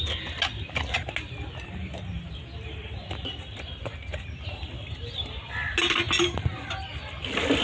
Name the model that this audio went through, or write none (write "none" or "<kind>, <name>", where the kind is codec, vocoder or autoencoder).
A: none